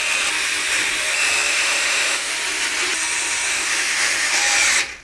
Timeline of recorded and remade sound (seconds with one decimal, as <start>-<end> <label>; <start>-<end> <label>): 0.0-1.5 recorded; 1.5-2.3 remade; 2.3-3.5 recorded; 3.5-4.4 remade; 4.4-5.0 recorded